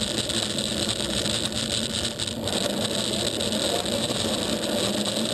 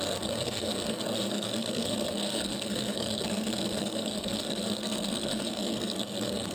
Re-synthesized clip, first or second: second